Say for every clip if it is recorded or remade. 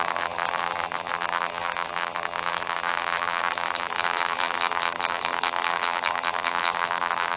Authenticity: remade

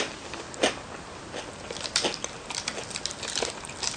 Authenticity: recorded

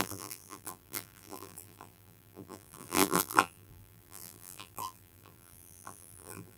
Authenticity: remade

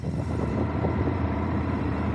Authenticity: remade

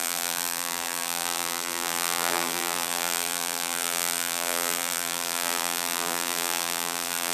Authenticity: remade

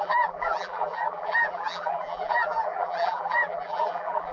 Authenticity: remade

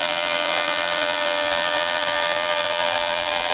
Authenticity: remade